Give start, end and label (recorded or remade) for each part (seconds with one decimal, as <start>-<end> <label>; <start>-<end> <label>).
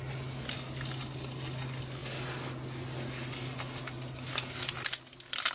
0.0-5.5 recorded